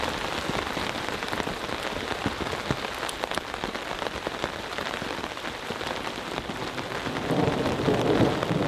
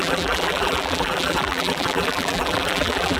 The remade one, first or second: second